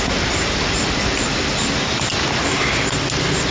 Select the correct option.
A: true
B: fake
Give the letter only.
A